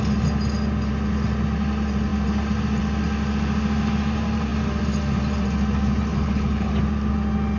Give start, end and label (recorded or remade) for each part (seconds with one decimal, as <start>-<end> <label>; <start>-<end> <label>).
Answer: 0.0-6.1 recorded; 6.1-6.7 remade; 6.7-7.6 recorded